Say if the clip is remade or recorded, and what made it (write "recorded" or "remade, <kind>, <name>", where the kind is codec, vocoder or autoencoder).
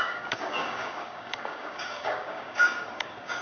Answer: remade, codec, DAC